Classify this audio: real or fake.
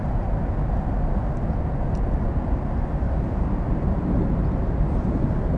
real